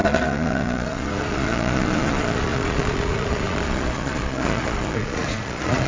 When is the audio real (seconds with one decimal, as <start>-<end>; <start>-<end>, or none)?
none